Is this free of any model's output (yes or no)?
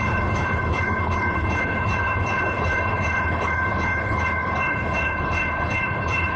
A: no